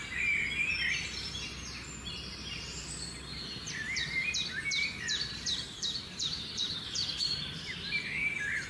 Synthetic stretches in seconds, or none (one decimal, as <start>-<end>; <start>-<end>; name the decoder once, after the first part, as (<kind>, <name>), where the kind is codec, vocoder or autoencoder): 3.5-8.7 (vocoder, BigVGAN v2)